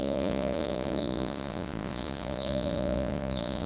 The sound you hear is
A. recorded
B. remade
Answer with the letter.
B